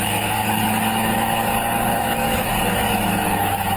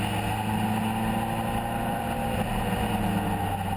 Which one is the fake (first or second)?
first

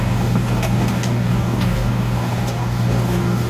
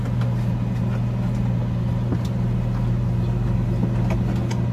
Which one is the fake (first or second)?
first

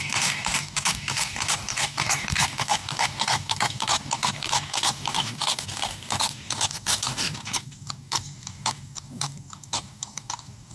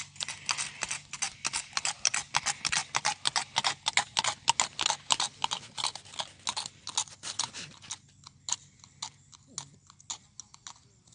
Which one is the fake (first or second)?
first